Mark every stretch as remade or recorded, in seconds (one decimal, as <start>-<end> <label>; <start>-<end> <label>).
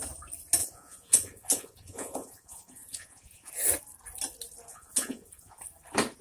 0.0-0.6 recorded; 0.6-3.5 remade; 3.5-4.7 recorded; 4.7-5.6 remade; 5.6-6.2 recorded